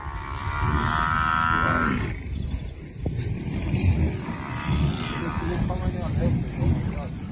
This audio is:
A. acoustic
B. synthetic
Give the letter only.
A